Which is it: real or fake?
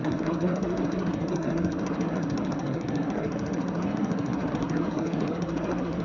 fake